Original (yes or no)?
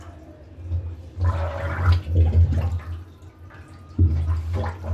yes